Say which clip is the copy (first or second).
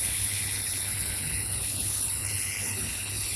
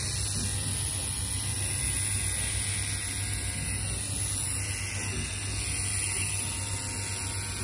first